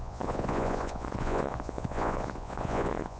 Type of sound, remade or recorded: remade